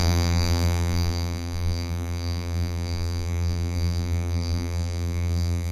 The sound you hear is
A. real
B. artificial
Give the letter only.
B